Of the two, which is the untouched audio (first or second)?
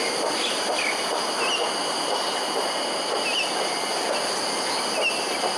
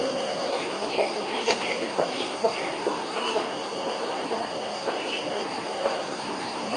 first